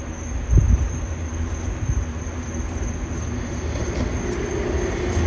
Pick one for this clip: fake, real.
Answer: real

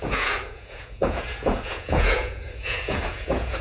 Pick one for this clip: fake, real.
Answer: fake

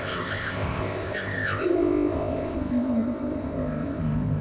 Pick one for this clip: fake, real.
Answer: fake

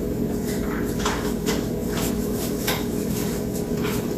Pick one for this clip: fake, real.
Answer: fake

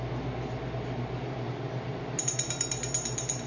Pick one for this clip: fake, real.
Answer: real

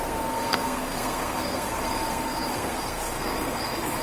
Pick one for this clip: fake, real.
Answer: fake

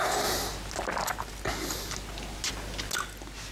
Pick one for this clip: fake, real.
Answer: real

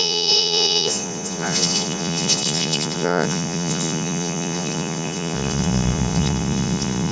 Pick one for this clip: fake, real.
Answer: fake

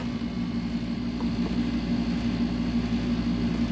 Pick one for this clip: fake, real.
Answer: real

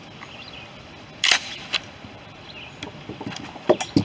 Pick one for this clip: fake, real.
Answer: real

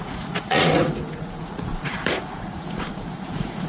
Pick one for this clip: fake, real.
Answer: fake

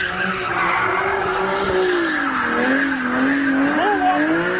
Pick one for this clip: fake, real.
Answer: real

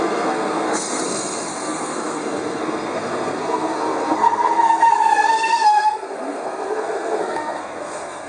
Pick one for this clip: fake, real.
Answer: fake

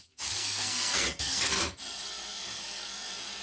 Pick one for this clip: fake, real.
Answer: fake